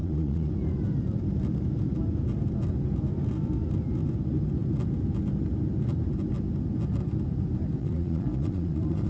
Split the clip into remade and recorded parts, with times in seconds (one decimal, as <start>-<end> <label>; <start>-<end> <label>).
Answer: 0.0-0.5 remade; 0.5-7.8 recorded; 7.8-9.1 remade